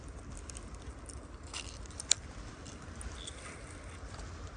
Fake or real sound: real